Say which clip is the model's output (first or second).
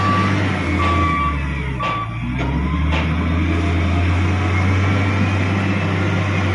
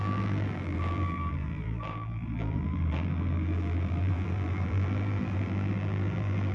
second